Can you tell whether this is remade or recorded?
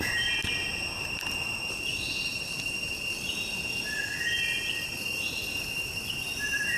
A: recorded